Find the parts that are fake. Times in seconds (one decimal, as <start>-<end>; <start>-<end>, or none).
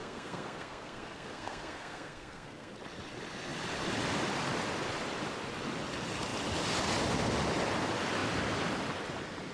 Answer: 0.0-2.7